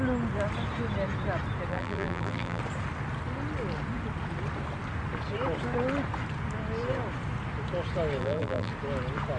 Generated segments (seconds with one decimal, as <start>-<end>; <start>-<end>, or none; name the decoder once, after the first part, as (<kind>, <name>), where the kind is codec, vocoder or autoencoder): 1.7-2.6 (vocoder, BigVGAN v2); 8.2-8.7